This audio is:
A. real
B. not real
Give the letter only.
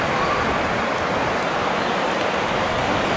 A